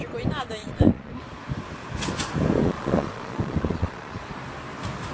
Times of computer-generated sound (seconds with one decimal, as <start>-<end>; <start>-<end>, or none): 0.6-1.1; 2.6-4.2